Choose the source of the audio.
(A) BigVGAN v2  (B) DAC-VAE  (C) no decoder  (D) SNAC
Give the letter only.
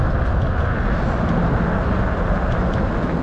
C